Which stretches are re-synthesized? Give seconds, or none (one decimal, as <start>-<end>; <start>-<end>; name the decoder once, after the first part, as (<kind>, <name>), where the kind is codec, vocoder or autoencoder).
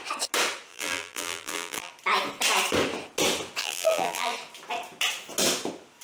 0.7-1.9 (vocoder, BigVGAN v2); 3.6-4.3